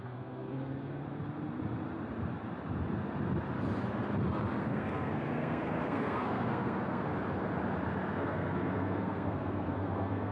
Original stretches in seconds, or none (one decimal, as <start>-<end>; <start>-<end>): 1.0-4.6; 7.1-8.1